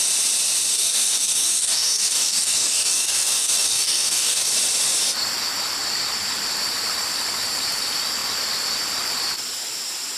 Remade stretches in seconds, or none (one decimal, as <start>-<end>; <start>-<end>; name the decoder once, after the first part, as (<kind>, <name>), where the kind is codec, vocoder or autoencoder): 0.7-4.5 (codec, DAC)